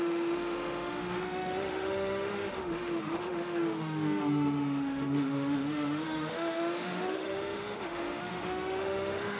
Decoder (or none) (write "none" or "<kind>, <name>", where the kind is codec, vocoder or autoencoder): autoencoder, DAC-VAE